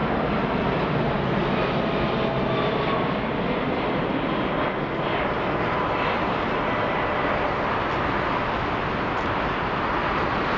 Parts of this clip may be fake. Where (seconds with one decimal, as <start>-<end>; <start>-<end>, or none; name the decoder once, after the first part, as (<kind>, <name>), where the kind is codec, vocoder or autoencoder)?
none